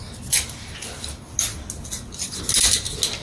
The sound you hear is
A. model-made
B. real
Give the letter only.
B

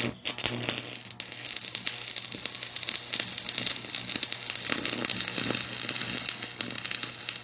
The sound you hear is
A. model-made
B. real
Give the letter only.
B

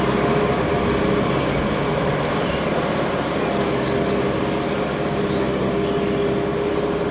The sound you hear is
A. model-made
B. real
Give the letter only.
B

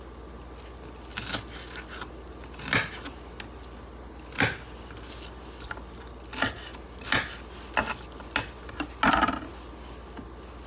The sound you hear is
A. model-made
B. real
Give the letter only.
B